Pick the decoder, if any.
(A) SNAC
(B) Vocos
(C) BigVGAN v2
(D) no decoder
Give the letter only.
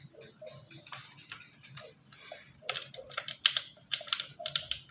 D